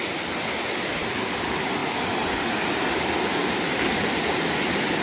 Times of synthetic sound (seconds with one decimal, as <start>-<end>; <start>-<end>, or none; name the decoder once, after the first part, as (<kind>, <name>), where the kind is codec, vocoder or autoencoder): none